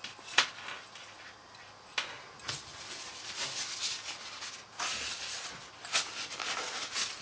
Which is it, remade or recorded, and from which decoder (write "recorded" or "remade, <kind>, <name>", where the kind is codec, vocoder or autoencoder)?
recorded